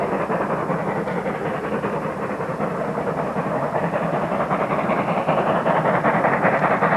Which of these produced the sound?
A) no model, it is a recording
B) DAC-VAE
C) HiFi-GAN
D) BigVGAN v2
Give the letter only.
A